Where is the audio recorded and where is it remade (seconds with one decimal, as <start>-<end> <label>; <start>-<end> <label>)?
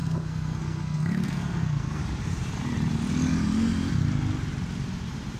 0.0-2.0 remade; 2.0-5.4 recorded